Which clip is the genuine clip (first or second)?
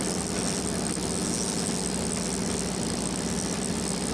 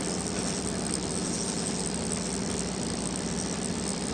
first